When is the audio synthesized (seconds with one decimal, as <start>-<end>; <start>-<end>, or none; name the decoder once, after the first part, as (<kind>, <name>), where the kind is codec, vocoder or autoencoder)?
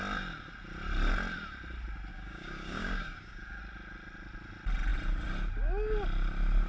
2.1-3.6 (codec, DAC)